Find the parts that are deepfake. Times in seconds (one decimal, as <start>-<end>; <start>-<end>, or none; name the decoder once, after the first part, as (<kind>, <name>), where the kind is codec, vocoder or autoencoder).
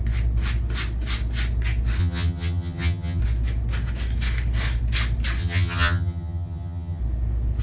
2.0-3.2 (vocoder, HiFi-GAN); 5.4-7.0